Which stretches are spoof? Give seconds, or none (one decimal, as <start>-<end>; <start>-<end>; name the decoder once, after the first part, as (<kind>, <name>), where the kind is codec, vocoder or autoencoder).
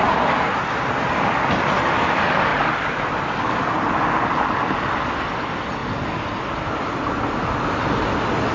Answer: none